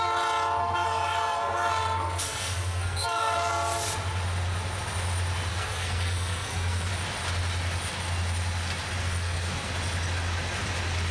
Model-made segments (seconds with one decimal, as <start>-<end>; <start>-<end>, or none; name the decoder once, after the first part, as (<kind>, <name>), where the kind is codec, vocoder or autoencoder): 0.6-3.5 (codec, SNAC); 5.5-6.9; 9.0-9.7